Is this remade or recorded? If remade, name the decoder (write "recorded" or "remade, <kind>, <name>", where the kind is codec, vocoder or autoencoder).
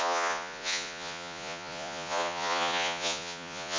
remade, vocoder, Vocos